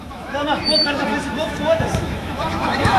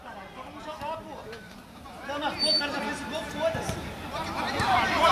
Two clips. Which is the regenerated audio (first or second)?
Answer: first